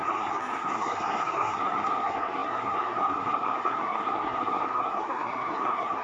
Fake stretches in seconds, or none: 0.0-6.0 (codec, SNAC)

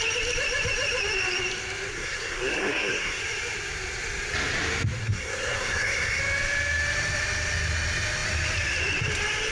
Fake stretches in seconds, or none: 1.9-3.2 (codec, SNAC); 5.0-6.2

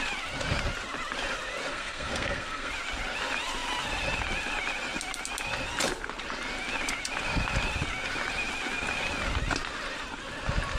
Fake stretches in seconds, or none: 1.7-2.7 (codec, SNAC)